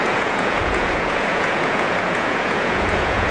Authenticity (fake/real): fake